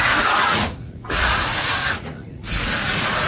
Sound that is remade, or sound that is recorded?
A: remade